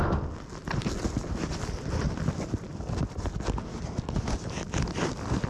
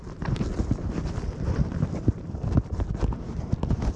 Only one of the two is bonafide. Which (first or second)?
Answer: first